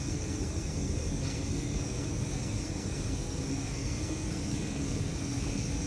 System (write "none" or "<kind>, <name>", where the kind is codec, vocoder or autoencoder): codec, SNAC